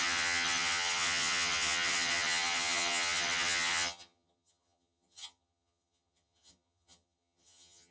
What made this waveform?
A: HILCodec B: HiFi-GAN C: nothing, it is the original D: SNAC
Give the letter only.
B